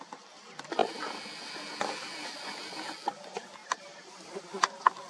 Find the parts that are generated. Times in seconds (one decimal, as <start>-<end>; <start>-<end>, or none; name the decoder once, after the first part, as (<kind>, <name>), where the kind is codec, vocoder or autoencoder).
3.6-4.4 (vocoder, BigVGAN v2)